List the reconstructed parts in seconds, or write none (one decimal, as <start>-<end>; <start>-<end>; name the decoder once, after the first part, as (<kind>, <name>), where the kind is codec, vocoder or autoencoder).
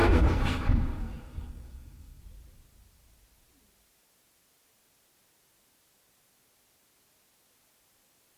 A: 0.0-2.2 (codec, SNAC)